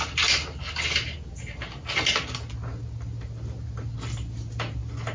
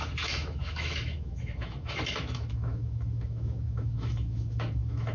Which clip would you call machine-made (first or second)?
second